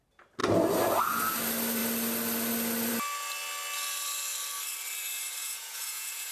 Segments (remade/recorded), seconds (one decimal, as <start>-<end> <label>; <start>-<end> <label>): 0.0-5.4 recorded; 5.4-6.3 remade